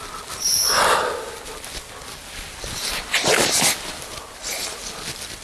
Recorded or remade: recorded